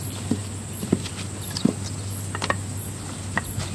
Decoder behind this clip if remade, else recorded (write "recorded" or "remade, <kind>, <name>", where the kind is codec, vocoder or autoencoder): recorded